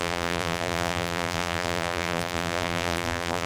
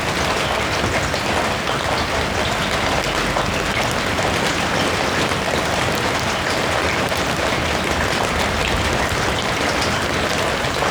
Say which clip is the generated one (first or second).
first